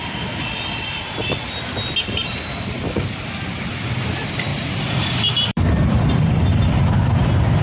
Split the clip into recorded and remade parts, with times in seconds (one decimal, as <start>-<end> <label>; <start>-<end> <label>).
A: 0.0-4.5 recorded; 4.5-6.1 remade; 6.1-7.6 recorded